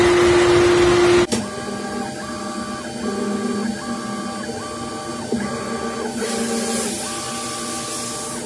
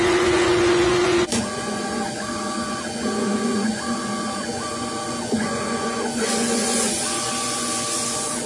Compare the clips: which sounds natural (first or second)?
first